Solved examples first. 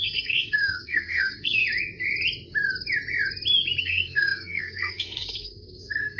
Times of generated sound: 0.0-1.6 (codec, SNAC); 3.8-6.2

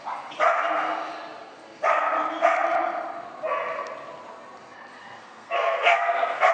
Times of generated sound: 5.0-6.5 (codec, SNAC)

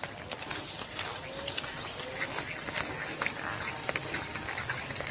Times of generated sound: none

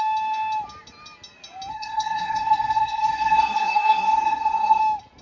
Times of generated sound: 1.7-4.8 (codec, SNAC)

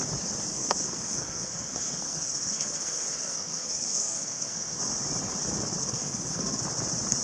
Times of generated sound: 0.5-4.8 (codec, SNAC); 5.8-6.6

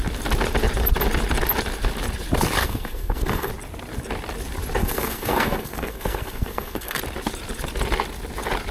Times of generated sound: 2.6-3.5 (codec, SNAC); 4.8-7.0

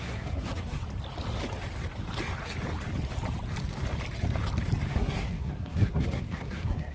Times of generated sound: 0.0-0.8 (codec, SNAC); 4.9-6.9

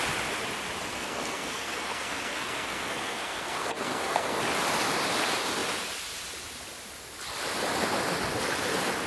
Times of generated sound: 0.9-4.4 (codec, SNAC)